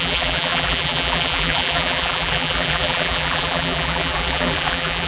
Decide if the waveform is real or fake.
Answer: fake